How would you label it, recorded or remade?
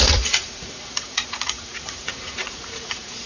remade